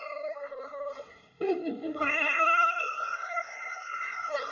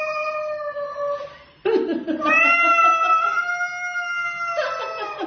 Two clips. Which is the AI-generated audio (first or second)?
first